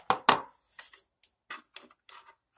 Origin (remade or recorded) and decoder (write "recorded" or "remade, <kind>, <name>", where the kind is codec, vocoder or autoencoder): recorded